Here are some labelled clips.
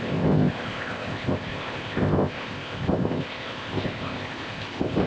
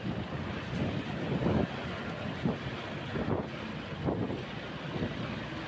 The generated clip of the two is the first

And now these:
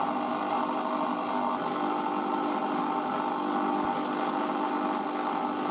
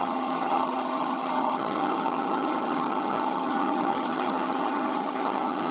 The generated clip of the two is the second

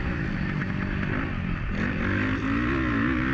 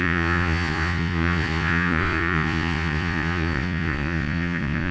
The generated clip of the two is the second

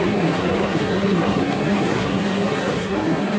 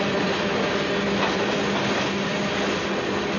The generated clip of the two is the first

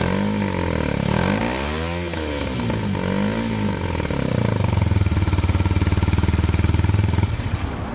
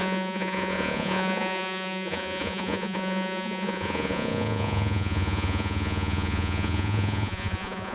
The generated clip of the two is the second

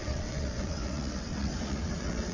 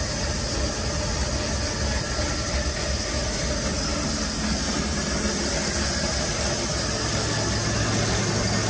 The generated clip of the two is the first